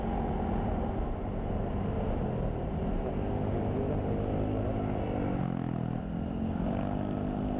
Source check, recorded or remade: recorded